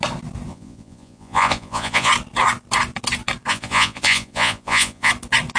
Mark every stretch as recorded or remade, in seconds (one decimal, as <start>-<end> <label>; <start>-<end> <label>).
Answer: 0.0-0.5 recorded; 0.5-2.1 remade; 2.1-3.5 recorded; 3.5-5.1 remade; 5.1-5.6 recorded